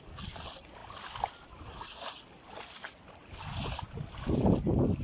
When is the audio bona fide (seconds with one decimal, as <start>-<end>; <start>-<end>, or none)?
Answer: 0.0-5.0